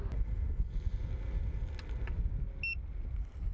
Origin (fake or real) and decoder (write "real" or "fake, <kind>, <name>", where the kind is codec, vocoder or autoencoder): real